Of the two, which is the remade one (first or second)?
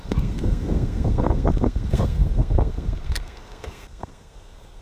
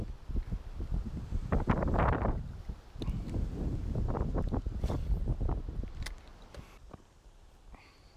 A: first